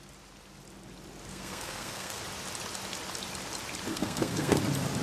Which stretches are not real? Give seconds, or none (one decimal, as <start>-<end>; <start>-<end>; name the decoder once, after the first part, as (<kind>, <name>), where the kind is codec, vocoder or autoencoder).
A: 1.3-2.2 (codec, SNAC); 3.9-4.6

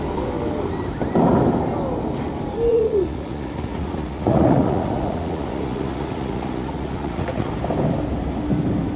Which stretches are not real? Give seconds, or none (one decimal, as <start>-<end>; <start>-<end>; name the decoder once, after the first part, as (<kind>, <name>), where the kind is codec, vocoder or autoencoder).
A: 2.7-7.5 (vocoder, Vocos)

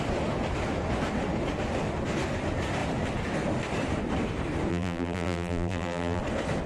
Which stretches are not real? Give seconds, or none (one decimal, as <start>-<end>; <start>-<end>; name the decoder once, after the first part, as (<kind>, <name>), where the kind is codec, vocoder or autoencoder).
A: 4.7-6.2 (vocoder, BigVGAN v2)